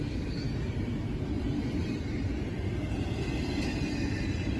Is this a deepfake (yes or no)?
no